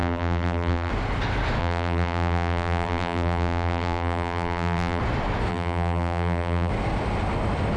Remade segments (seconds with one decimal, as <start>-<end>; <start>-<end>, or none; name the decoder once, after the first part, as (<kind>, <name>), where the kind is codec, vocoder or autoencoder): 0.0-0.9 (vocoder, BigVGAN v2); 1.6-5.0; 5.5-6.7